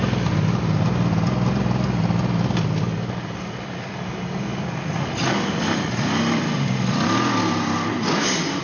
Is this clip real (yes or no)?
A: yes